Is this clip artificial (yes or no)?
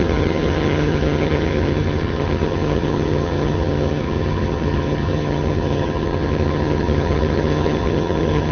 yes